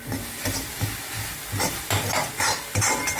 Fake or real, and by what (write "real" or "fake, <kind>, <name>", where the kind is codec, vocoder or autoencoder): real